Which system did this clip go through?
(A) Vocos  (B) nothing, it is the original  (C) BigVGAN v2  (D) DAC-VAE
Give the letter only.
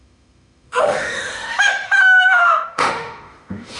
D